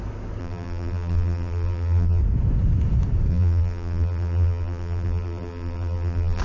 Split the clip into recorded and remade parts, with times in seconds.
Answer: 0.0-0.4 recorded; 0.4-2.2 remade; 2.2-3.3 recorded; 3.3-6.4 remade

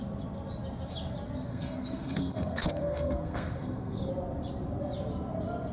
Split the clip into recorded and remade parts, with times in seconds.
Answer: 0.0-1.5 recorded; 1.5-4.1 remade; 4.1-5.7 recorded